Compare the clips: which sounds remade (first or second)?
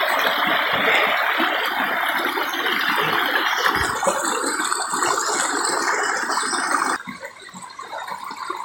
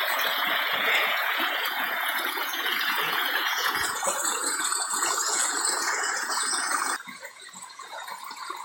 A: second